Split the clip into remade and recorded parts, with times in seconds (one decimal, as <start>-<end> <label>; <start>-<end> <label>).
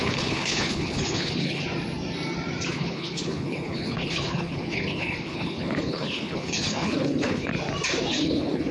0.0-1.6 remade; 1.6-2.7 recorded; 2.7-7.5 remade; 7.5-8.1 recorded; 8.1-8.7 remade